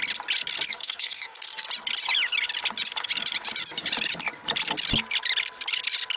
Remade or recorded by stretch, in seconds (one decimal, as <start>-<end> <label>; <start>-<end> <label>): 0.0-0.8 recorded; 0.8-1.7 remade; 1.7-6.2 recorded